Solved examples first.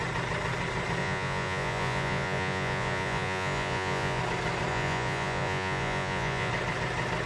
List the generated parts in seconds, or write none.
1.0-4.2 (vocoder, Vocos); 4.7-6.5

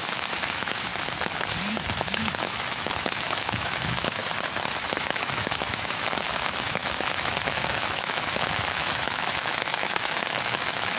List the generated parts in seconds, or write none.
0.0-0.9 (autoencoder, DAC-VAE); 1.7-4.2; 4.9-11.0

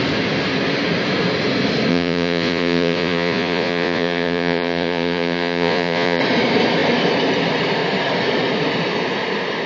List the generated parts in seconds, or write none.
1.9-6.2 (vocoder, Vocos)

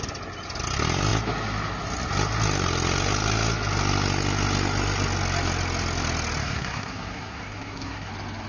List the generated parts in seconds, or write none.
6.4-8.1 (codec, SNAC)

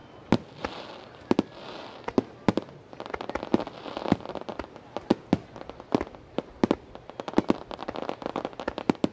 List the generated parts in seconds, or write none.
none